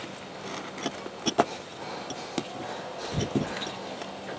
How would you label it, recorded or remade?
recorded